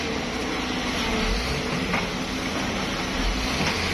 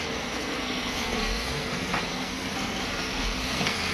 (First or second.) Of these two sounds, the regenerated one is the second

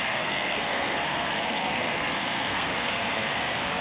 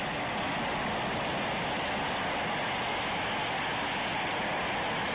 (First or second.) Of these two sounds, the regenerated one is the first